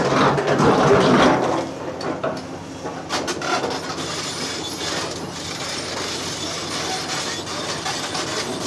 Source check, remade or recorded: recorded